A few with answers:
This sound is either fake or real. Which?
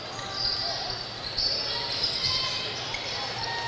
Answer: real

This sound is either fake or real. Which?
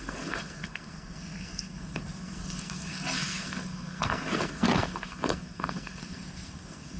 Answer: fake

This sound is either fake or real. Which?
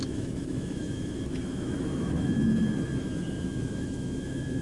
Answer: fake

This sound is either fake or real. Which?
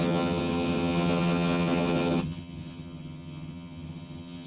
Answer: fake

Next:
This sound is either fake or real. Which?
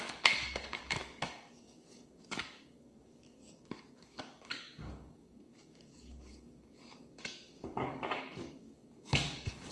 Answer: fake